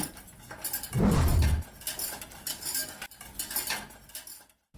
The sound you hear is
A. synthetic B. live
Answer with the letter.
B